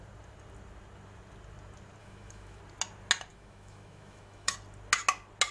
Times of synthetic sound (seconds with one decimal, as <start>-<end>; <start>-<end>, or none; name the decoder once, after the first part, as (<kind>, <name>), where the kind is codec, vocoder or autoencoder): 2.0-2.6 (autoencoder, DAC-VAE); 3.3-4.5